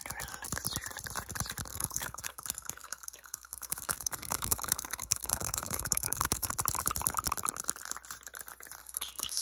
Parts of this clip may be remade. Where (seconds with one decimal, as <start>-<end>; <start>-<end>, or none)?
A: 1.7-6.5; 8.8-9.4